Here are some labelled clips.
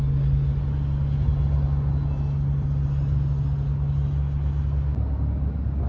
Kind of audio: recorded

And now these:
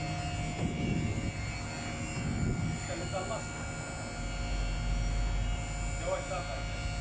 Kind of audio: recorded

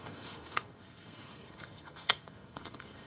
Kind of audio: remade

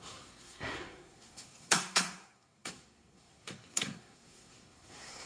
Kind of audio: remade